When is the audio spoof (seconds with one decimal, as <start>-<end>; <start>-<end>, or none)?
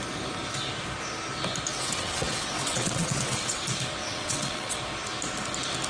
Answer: 1.7-3.6; 4.0-4.8